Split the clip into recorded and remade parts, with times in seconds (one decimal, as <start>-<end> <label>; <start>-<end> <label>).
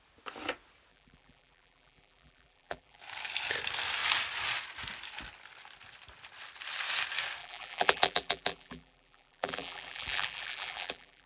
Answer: 0.0-0.9 recorded; 0.9-3.0 remade; 3.0-7.4 recorded; 7.4-11.3 remade